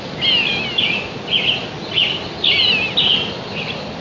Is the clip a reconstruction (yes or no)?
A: no